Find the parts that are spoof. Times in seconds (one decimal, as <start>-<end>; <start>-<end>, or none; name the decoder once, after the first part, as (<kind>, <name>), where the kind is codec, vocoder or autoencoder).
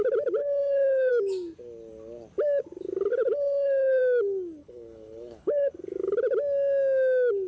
0.4-1.1 (codec, HILCodec); 3.1-4.0; 4.6-5.7